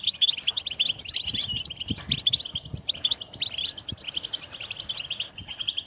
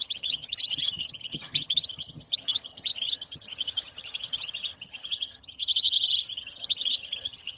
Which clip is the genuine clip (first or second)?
first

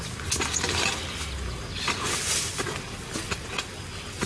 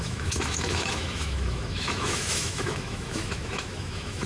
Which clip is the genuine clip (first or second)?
first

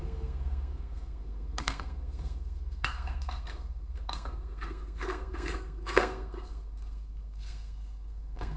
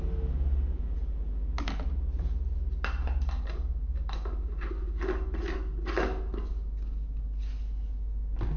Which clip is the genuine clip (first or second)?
second